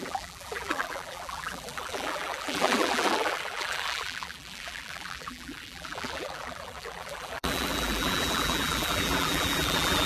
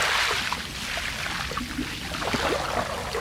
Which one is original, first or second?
second